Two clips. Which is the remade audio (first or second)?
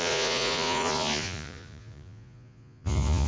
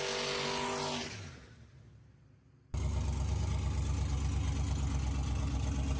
first